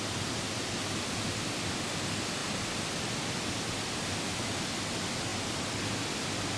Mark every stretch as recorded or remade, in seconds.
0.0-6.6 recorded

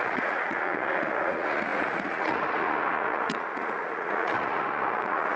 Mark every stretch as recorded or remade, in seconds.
0.0-5.4 remade

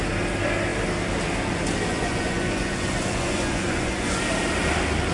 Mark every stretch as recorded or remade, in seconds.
0.0-1.9 recorded; 1.9-4.2 remade; 4.2-5.1 recorded

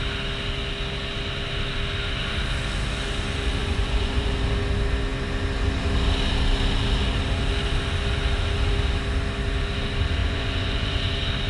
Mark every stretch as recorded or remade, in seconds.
0.0-3.6 recorded; 3.6-4.3 remade; 4.3-10.2 recorded; 10.2-11.0 remade; 11.0-11.5 recorded

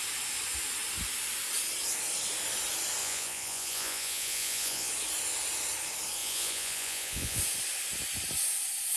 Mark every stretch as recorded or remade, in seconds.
0.0-3.0 recorded; 3.0-4.9 remade; 4.9-6.2 recorded; 6.2-7.4 remade; 7.4-9.0 recorded

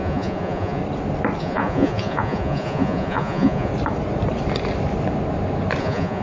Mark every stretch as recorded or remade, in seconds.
0.0-0.8 remade; 0.8-1.4 recorded; 1.4-3.7 remade; 3.7-5.8 recorded; 5.8-6.2 remade

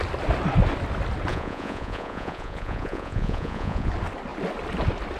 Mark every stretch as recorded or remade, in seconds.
0.0-1.3 recorded; 1.3-3.9 remade; 3.9-5.2 recorded

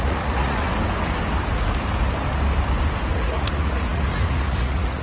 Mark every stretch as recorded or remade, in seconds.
0.0-0.7 remade; 0.7-3.1 recorded; 3.1-5.0 remade